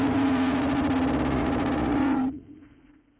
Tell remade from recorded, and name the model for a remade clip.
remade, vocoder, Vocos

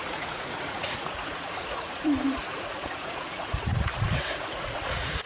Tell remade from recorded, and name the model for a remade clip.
remade, vocoder, Vocos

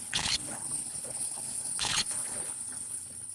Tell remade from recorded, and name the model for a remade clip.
remade, codec, HILCodec